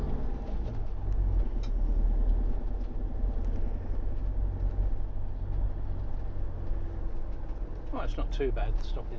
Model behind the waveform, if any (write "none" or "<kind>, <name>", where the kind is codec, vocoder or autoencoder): none